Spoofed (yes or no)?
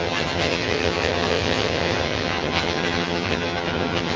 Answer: yes